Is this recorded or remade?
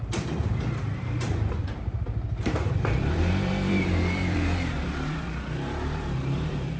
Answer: remade